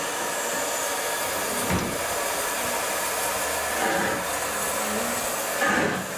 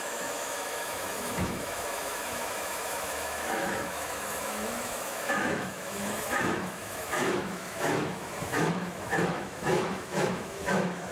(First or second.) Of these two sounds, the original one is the first